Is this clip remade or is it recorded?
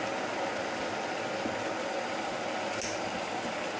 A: recorded